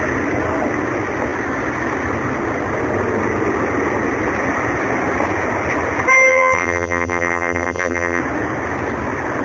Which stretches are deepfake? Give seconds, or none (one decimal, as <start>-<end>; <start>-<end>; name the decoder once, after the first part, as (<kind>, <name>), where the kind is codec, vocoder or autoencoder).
6.3-8.2 (vocoder, BigVGAN v2)